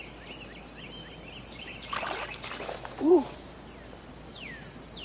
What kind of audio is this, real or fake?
real